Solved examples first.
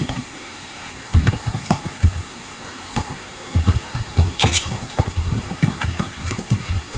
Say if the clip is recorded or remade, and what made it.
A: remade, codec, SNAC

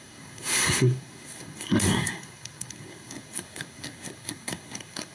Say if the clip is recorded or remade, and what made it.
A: remade, codec, SNAC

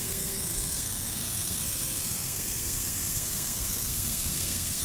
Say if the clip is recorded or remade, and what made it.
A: remade, codec, SNAC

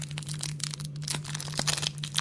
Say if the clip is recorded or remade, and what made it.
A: recorded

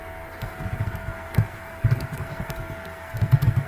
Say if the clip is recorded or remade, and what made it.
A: remade, codec, SNAC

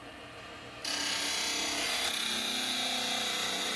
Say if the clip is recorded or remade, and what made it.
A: recorded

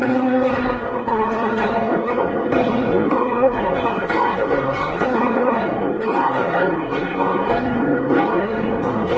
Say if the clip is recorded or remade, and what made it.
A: remade, codec, SNAC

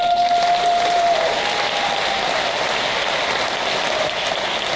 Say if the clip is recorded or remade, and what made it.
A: recorded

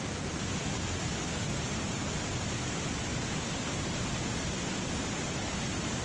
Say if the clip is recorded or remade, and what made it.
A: recorded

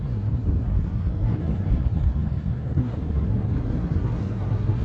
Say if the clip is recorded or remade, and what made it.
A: remade, codec, SNAC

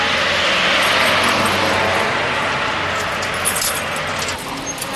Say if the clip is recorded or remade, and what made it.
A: recorded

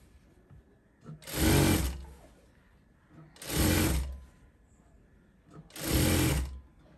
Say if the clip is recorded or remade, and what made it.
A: recorded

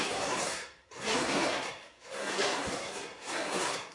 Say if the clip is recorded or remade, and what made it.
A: remade, codec, SNAC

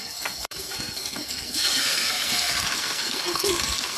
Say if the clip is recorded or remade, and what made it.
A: remade, codec, SNAC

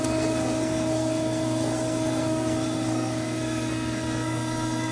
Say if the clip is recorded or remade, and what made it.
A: remade, codec, SNAC